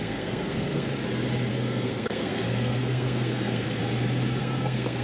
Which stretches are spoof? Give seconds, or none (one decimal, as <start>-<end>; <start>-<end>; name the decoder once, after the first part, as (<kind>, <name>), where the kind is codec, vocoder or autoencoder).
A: 0.0-0.9 (codec, SNAC); 1.5-3.8; 4.4-5.0